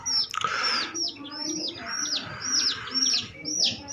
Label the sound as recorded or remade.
recorded